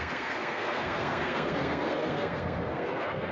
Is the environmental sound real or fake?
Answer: fake